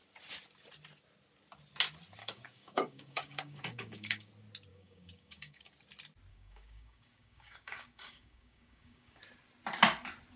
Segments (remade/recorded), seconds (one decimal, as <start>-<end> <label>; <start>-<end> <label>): 0.0-2.2 recorded; 2.2-4.3 remade; 4.3-4.7 recorded; 4.7-5.7 remade; 5.7-6.3 recorded; 6.3-9.2 remade; 9.2-10.4 recorded